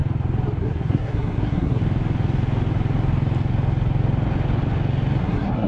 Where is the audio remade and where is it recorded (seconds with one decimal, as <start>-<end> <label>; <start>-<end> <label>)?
0.0-0.6 recorded; 0.6-1.8 remade; 1.8-5.2 recorded; 5.2-5.7 remade